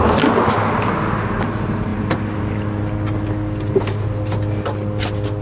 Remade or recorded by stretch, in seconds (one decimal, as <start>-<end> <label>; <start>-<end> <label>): 0.0-5.4 recorded